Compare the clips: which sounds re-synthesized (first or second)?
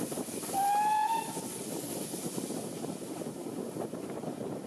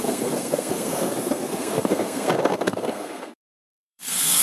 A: second